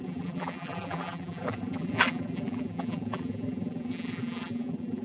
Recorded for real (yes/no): no